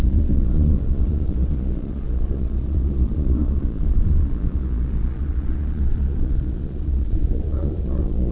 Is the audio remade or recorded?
remade